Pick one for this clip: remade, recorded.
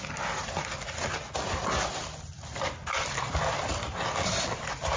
recorded